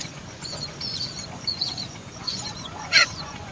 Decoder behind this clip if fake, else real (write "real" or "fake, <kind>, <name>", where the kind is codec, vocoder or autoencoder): fake, vocoder, Vocos